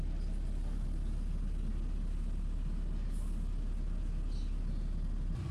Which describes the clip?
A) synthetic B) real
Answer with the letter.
B